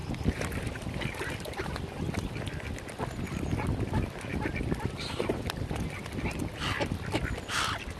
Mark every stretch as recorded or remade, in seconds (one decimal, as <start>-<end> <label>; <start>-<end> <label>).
0.0-8.0 recorded